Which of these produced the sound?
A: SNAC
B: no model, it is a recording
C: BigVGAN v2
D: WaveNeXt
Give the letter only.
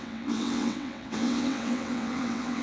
D